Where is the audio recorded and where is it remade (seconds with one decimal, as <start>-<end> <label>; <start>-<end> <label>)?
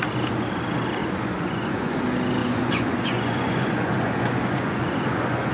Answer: 0.0-1.0 recorded; 1.0-2.0 remade; 2.0-2.4 recorded; 2.4-5.5 remade